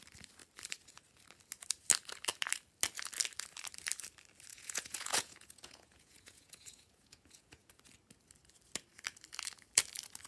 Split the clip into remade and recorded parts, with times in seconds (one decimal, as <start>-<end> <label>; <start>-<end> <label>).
0.0-4.5 recorded; 4.5-7.7 remade; 7.7-10.3 recorded